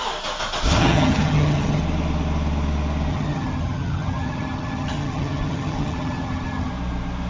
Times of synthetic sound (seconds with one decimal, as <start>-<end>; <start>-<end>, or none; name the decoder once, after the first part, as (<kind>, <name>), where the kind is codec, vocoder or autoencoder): 0.8-1.8 (vocoder, HiFi-GAN); 3.1-6.7